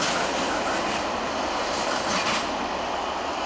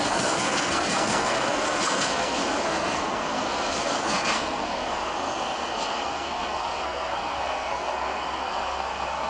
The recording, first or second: first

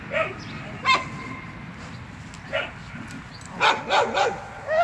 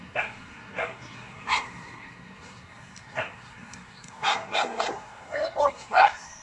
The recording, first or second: first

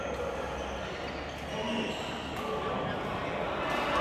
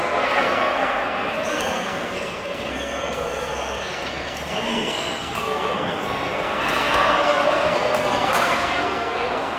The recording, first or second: first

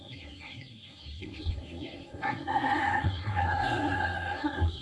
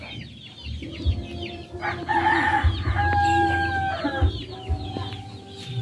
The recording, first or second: second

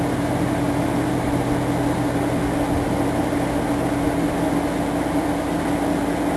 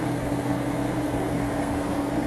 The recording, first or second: first